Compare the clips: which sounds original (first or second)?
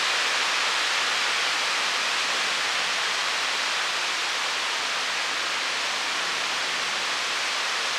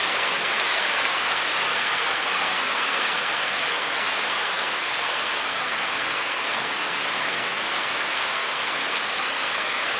first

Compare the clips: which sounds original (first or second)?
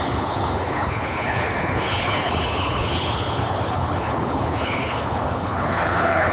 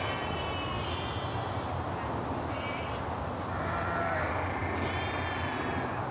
second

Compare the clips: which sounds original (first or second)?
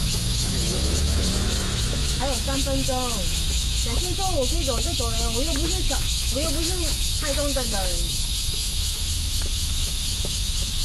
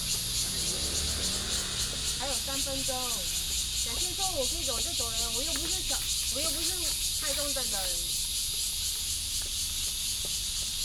second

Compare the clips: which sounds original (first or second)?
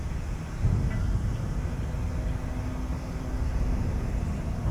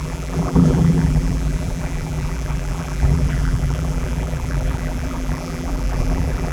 first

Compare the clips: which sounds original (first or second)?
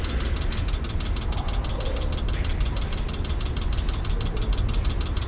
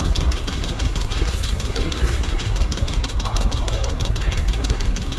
first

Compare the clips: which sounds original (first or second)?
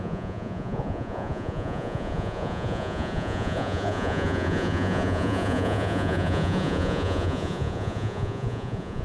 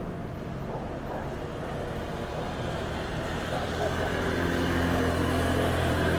second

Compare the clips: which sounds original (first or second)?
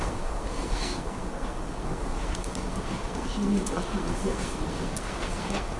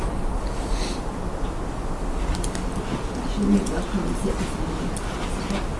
second